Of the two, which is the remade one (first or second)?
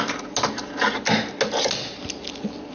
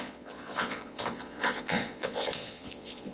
second